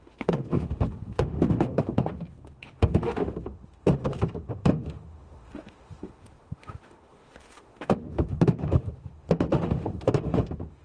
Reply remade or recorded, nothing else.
remade